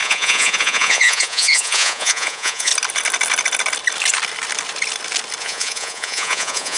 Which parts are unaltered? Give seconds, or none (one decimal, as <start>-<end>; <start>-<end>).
2.7-5.4